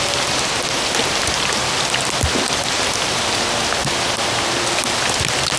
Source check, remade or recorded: recorded